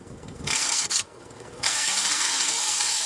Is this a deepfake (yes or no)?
yes